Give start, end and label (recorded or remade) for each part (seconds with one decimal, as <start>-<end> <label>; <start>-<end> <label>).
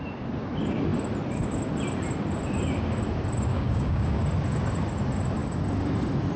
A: 0.0-3.5 recorded; 3.5-4.2 remade; 4.2-6.4 recorded